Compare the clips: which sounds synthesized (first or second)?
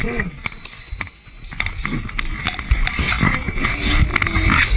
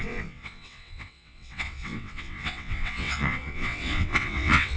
second